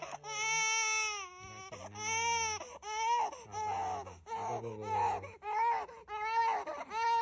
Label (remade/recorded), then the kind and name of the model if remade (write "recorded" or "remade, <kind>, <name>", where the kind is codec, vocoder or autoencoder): recorded